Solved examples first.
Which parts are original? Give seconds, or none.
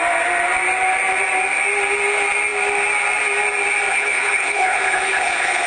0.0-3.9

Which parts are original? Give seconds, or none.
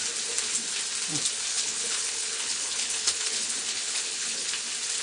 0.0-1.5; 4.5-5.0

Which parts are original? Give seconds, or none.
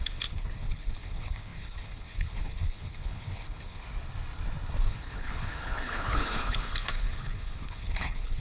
3.8-4.8